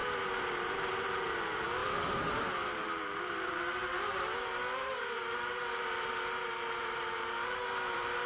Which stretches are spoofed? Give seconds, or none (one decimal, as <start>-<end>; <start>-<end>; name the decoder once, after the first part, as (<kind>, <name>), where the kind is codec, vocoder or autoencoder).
0.0-8.3 (vocoder, BigVGAN v2)